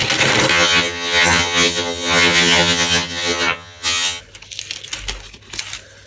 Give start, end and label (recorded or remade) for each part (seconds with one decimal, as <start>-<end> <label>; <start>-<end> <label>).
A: 0.0-0.5 recorded; 0.5-4.2 remade; 4.2-6.1 recorded